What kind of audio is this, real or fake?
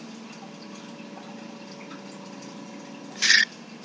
real